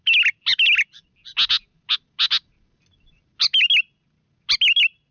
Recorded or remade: recorded